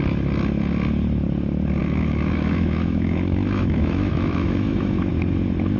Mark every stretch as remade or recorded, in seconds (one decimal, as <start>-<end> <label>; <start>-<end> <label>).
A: 0.0-1.8 recorded; 1.8-5.1 remade; 5.1-5.8 recorded